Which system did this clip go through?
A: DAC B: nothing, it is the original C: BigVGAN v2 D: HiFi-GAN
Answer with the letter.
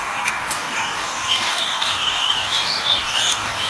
A